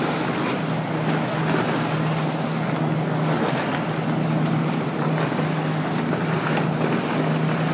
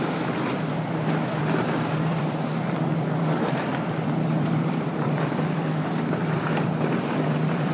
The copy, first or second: second